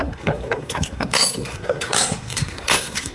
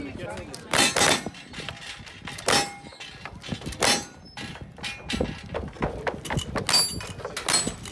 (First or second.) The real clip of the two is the second